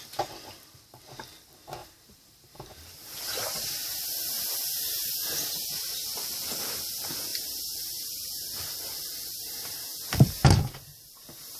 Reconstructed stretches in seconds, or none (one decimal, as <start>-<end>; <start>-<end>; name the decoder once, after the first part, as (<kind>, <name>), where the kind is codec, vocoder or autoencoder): 1.8-3.7 (vocoder, BigVGAN v2); 7.3-11.1